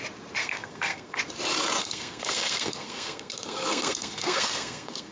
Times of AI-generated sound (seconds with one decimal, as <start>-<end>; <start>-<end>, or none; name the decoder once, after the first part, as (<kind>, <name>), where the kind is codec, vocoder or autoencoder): 0.4-1.2 (codec, SNAC); 1.8-5.1